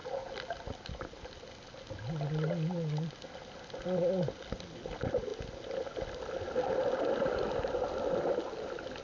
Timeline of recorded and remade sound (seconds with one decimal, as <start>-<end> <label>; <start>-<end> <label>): 0.0-9.0 recorded

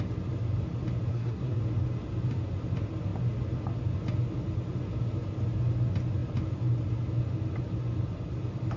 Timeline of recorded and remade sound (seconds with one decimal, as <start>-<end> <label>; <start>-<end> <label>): 0.0-1.1 recorded; 1.1-1.6 remade; 1.6-8.8 recorded